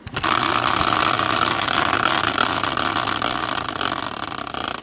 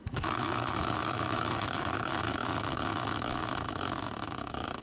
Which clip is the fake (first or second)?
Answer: second